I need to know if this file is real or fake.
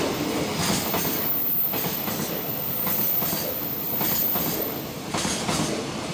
real